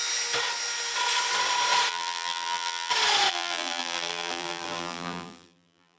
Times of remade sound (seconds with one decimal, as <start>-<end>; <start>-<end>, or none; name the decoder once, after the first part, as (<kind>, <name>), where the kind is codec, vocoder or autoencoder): 1.9-2.9 (vocoder, BigVGAN v2); 3.3-6.0